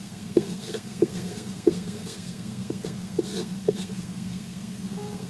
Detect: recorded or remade remade